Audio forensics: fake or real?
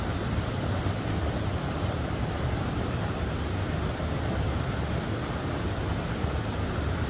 real